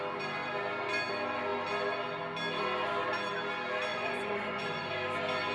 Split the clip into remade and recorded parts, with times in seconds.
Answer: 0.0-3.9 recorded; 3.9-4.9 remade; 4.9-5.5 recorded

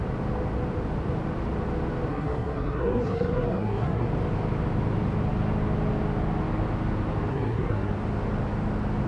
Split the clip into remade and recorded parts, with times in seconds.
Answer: 0.0-2.1 recorded; 2.1-4.1 remade; 4.1-7.3 recorded; 7.3-7.9 remade; 7.9-9.1 recorded

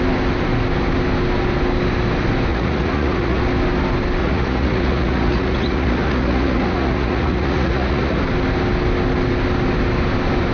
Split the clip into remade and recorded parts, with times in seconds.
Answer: 0.0-2.5 recorded; 2.5-3.4 remade; 3.4-4.2 recorded; 4.2-8.2 remade; 8.2-10.5 recorded

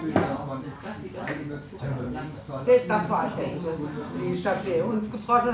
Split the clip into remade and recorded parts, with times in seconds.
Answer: 0.0-5.5 recorded

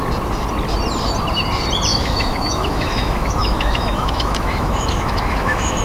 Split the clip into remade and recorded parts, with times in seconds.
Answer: 0.0-1.9 recorded; 1.9-5.8 remade

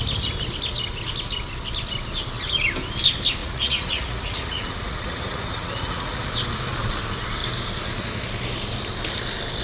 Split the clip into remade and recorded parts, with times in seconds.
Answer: 0.0-3.4 recorded; 3.4-6.3 remade; 6.3-9.6 recorded

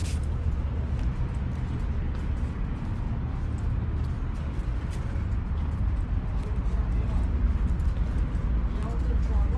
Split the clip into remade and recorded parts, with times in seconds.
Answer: 0.0-2.8 remade; 2.8-9.6 recorded